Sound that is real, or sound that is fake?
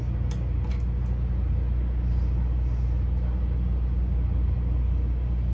real